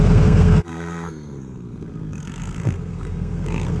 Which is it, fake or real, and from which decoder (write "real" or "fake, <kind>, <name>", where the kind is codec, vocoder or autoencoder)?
fake, codec, SNAC